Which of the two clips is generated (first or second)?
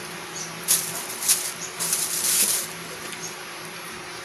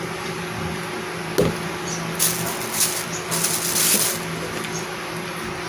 first